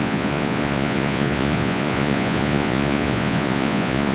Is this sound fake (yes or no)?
yes